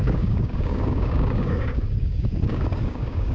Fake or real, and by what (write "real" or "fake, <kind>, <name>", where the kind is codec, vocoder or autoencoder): fake, codec, DAC